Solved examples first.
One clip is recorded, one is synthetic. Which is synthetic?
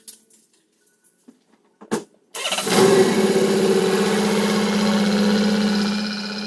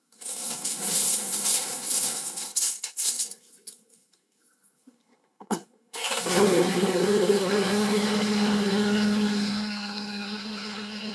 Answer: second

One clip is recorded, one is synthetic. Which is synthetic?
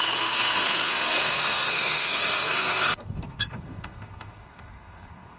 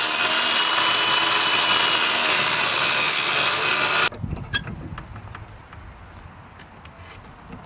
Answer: first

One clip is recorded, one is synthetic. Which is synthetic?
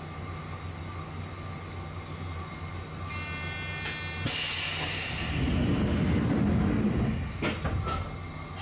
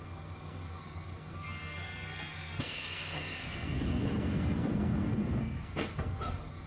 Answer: second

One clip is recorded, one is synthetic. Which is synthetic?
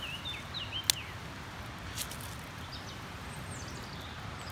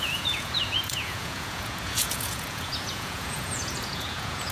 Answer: second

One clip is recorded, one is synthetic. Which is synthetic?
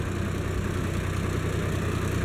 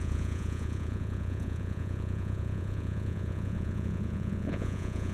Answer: second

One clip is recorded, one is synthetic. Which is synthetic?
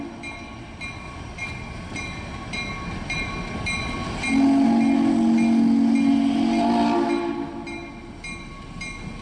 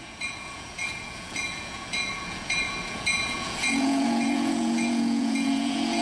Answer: second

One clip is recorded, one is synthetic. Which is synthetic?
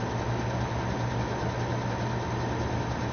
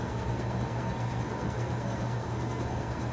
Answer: second